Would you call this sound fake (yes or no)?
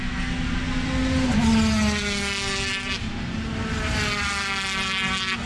no